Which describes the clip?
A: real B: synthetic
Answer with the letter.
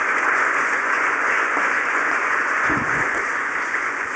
B